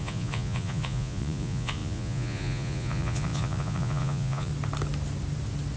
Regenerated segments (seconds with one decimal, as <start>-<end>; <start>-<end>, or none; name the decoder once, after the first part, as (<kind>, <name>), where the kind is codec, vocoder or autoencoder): 0.0-4.5 (vocoder, Vocos)